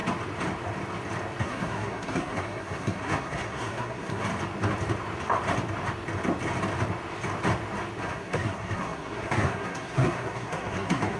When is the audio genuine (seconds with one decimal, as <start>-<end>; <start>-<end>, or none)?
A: 0.0-1.4; 4.3-8.0